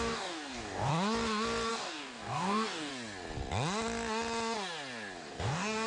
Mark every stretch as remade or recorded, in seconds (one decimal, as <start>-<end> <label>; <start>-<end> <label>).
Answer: 0.0-0.9 remade; 0.9-1.7 recorded; 1.7-2.9 remade; 2.9-5.2 recorded; 5.2-5.9 remade